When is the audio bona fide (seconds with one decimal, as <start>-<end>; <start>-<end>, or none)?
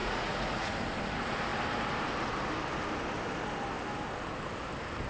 0.7-5.1